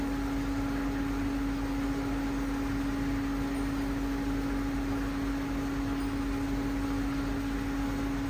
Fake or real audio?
real